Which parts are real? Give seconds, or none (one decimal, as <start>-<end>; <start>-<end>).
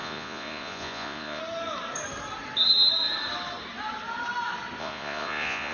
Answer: 1.4-4.8